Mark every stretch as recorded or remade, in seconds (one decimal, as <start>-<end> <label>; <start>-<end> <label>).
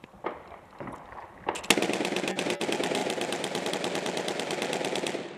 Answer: 0.0-3.0 recorded; 3.0-3.7 remade; 3.7-5.4 recorded